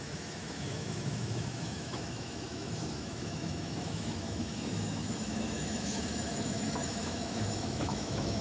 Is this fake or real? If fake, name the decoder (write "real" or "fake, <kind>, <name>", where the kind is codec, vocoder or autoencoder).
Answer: fake, autoencoder, DAC-VAE